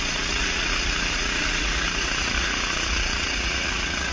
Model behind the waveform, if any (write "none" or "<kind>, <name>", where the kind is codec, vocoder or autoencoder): vocoder, Vocos